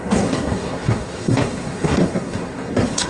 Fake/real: fake